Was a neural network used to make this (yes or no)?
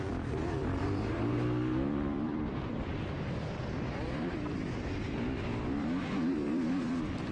yes